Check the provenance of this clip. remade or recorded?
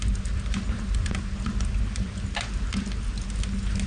recorded